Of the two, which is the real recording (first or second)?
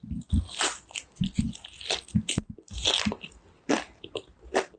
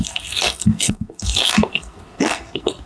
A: first